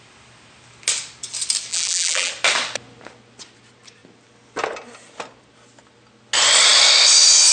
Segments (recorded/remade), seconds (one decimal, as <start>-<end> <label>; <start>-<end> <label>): 0.0-1.7 recorded; 1.7-2.3 remade; 2.3-7.5 recorded